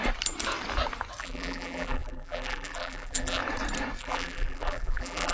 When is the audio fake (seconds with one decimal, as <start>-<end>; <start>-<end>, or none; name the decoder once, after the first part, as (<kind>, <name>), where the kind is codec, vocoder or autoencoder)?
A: 1.2-3.4 (vocoder, BigVGAN v2); 4.0-5.3